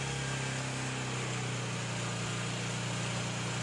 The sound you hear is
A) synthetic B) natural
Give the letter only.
B